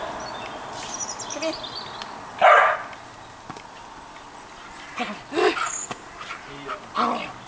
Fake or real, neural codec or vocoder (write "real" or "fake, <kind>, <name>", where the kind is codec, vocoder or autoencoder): real